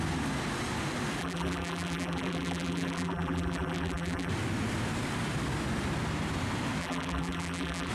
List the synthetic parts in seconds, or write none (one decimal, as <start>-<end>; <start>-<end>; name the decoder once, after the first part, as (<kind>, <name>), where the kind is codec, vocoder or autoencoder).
1.2-4.3 (vocoder, BigVGAN v2); 6.8-7.9